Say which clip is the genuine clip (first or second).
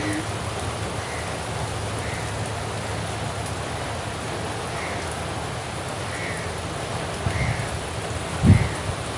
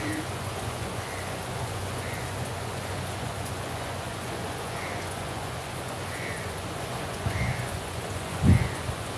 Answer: first